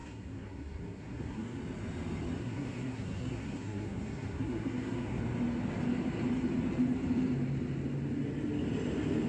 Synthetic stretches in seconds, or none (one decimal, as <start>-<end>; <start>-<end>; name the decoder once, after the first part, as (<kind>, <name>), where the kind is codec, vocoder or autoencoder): 0.0-1.6 (codec, SNAC); 2.4-5.2